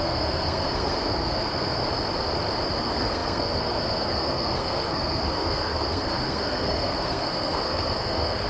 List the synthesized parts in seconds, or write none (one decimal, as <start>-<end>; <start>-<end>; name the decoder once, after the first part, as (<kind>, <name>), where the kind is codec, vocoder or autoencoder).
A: 0.0-1.8 (codec, SNAC); 2.8-8.5